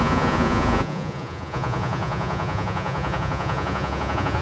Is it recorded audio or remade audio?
remade